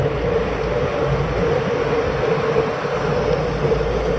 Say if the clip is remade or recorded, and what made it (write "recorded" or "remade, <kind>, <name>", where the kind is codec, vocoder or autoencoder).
recorded